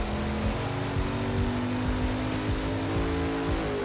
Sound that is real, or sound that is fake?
real